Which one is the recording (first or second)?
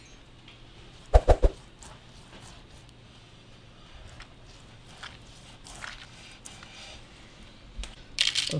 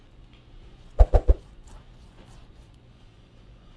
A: first